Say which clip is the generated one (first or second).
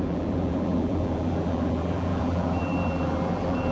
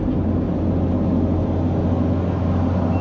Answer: first